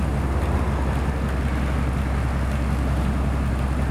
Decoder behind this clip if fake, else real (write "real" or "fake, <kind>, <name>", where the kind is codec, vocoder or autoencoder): real